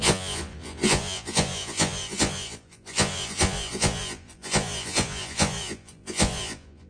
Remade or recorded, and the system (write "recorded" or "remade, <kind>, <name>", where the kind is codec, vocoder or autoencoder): remade, vocoder, Vocos